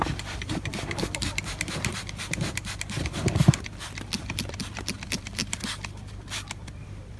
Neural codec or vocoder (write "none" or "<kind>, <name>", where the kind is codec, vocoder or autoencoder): vocoder, BigVGAN v2